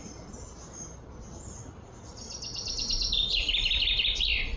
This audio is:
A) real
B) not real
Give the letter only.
A